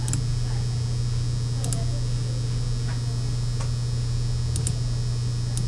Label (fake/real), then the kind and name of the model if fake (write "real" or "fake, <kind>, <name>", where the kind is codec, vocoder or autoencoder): real